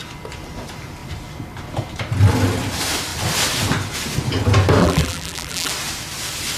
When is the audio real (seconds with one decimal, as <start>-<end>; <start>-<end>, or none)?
0.0-4.8; 5.7-6.6

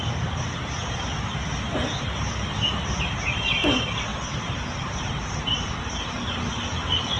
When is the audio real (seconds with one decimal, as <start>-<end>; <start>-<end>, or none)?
0.0-7.2

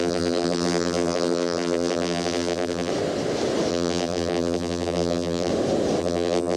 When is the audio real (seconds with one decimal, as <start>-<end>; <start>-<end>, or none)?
2.9-3.7; 5.5-6.0

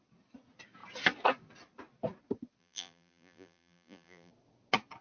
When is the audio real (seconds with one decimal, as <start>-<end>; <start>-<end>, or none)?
0.0-2.6; 4.3-5.0

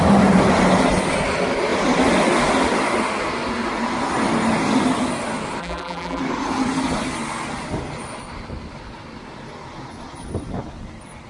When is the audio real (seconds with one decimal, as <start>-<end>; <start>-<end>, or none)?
0.0-5.6; 6.2-11.3